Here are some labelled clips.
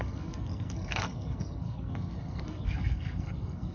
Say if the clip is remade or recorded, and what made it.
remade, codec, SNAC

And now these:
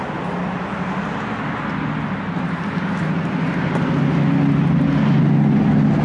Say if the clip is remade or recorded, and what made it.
recorded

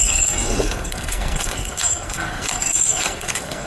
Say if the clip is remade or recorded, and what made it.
remade, codec, SNAC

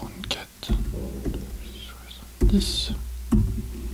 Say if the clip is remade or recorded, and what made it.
recorded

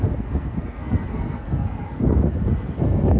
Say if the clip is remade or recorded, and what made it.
remade, codec, SNAC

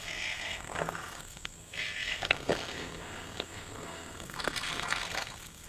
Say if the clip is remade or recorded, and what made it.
remade, codec, SNAC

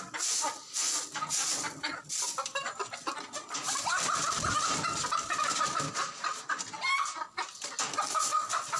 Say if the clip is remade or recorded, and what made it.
recorded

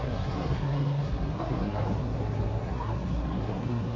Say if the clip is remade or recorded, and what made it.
remade, codec, SNAC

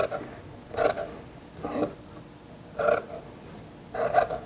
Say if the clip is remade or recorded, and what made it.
recorded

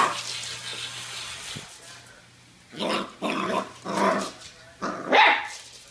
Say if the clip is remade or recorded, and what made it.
recorded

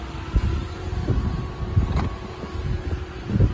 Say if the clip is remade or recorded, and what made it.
recorded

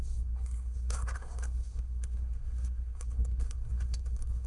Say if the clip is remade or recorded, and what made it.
remade, codec, SNAC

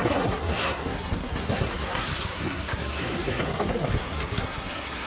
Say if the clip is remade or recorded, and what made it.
remade, codec, SNAC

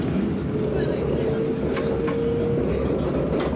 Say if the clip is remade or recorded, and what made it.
recorded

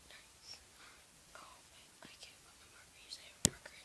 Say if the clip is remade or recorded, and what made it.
recorded